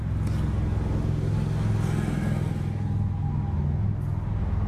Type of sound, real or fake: real